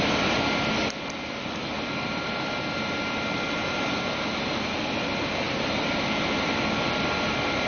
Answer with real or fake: real